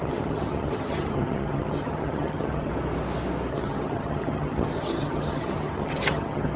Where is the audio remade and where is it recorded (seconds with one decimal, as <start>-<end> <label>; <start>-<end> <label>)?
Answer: 0.0-2.7 remade; 2.7-3.5 recorded; 3.5-6.6 remade